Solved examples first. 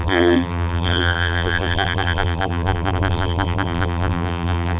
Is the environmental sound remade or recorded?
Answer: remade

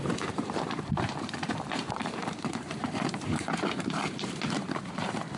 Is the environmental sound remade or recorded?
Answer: remade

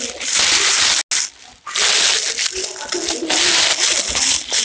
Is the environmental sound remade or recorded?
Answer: recorded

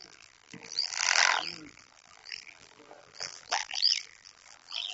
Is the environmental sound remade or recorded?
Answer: remade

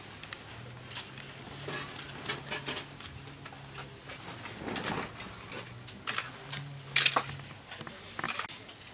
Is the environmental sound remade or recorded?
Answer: recorded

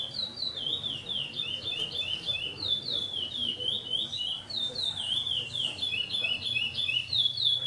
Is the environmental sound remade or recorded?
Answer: remade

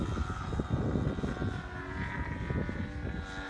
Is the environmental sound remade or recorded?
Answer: recorded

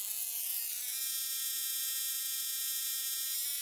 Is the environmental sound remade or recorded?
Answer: recorded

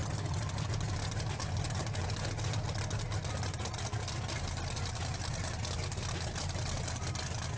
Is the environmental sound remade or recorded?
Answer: recorded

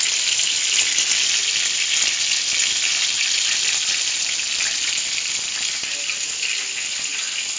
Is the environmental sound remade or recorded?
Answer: recorded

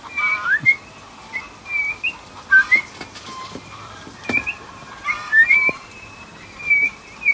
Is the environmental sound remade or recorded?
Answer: remade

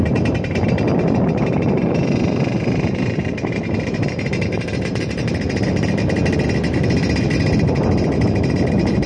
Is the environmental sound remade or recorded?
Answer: remade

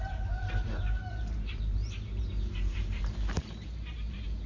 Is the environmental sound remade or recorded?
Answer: remade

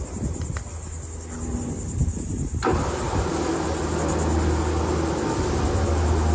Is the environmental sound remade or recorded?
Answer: recorded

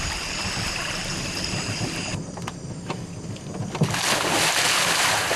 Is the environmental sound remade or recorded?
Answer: recorded